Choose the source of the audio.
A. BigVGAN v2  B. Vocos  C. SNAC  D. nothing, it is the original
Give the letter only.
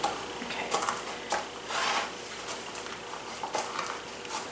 D